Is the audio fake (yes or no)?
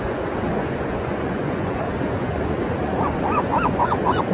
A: yes